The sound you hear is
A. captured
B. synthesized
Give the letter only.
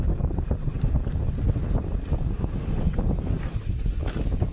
A